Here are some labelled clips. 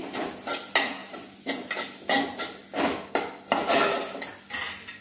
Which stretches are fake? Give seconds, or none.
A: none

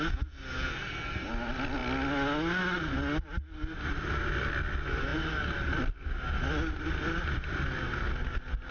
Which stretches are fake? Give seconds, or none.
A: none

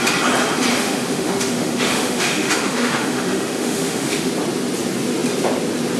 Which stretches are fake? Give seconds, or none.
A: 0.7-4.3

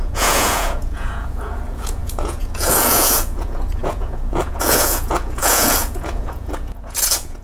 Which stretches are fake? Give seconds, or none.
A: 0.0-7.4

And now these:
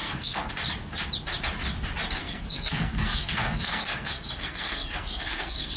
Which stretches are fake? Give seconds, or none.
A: 0.0-0.5; 2.2-5.8

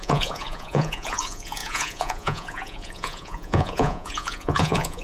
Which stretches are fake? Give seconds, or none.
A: 0.0-5.0